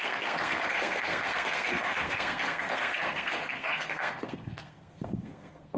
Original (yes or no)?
no